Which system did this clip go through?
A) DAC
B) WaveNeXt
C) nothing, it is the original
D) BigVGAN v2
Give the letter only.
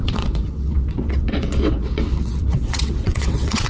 B